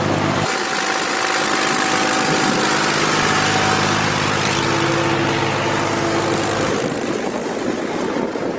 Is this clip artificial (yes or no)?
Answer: no